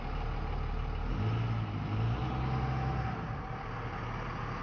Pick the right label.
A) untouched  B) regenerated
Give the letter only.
A